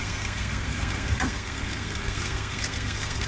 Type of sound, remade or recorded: remade